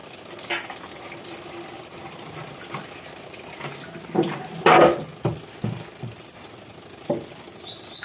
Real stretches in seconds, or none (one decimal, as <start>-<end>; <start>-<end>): 0.0-8.0